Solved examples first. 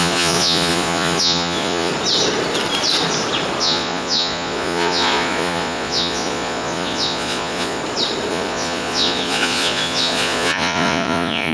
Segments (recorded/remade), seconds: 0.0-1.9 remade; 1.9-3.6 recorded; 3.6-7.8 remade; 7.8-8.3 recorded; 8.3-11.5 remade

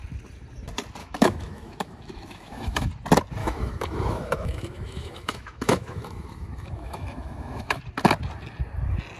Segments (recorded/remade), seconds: 0.0-1.0 recorded; 1.0-2.9 remade; 2.9-3.4 recorded; 3.4-7.8 remade; 7.8-9.2 recorded

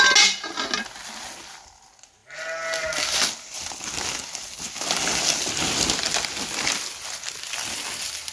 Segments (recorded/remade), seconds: 0.0-8.3 recorded

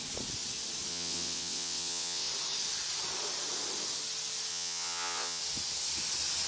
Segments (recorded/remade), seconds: 0.0-0.9 recorded; 0.9-2.3 remade; 2.3-4.5 recorded; 4.5-5.4 remade; 5.4-6.5 recorded

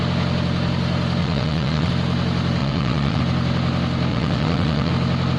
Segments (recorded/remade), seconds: 0.0-1.2 recorded; 1.2-1.9 remade; 1.9-2.6 recorded; 2.6-3.2 remade; 3.2-4.1 recorded; 4.1-4.9 remade; 4.9-5.4 recorded

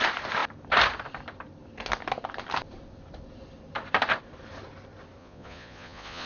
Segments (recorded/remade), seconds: 0.0-5.2 recorded; 5.2-6.3 remade

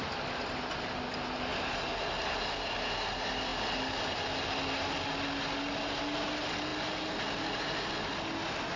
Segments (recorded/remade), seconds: 0.0-8.8 recorded

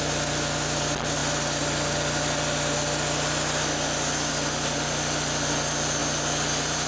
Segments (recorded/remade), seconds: 0.0-6.9 recorded